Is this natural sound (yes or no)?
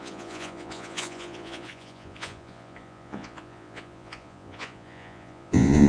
no